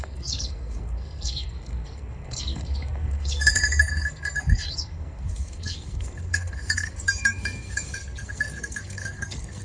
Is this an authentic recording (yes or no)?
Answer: no